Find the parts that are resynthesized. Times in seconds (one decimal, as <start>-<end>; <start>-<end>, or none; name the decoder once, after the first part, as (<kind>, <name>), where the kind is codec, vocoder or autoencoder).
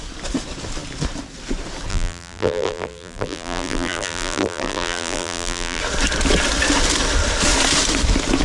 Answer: 1.9-5.8 (vocoder, BigVGAN v2)